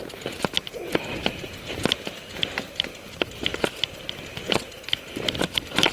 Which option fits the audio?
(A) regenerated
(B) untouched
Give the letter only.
B